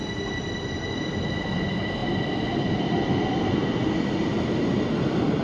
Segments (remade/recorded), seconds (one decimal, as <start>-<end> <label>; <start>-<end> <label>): 0.0-5.4 recorded

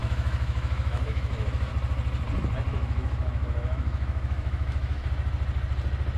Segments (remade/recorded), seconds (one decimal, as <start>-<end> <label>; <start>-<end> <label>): 0.0-1.7 remade; 1.7-2.7 recorded; 2.7-5.1 remade; 5.1-6.2 recorded